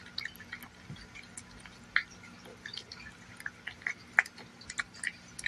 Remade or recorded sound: recorded